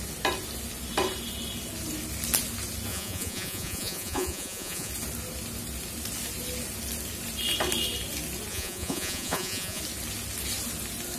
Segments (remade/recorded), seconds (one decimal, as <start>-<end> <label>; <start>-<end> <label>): 0.0-2.9 recorded; 2.9-4.9 remade; 4.9-8.5 recorded; 8.5-9.8 remade; 9.8-11.2 recorded